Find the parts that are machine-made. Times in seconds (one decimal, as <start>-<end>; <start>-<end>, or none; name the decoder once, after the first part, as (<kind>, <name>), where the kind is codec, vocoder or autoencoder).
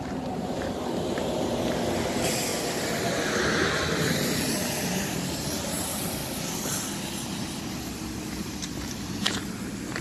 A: 0.0-2.5 (vocoder, BigVGAN v2); 3.7-6.2; 8.4-10.0